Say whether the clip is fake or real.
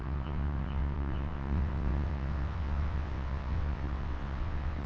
fake